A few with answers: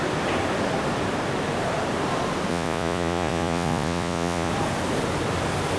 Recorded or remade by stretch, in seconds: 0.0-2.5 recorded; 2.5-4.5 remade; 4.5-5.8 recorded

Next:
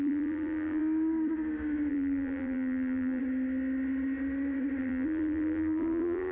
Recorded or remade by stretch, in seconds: 0.0-0.8 remade; 0.8-1.9 recorded; 1.9-3.2 remade; 3.2-4.8 recorded; 4.8-6.3 remade

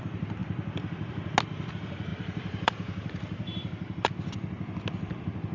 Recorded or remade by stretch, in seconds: 0.0-2.1 recorded; 2.1-4.1 remade; 4.1-5.5 recorded